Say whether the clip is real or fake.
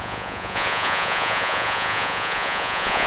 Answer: fake